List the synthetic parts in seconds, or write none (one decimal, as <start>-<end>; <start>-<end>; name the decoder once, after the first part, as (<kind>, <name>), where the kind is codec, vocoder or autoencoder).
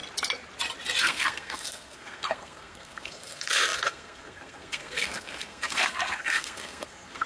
1.0-7.3 (codec, SNAC)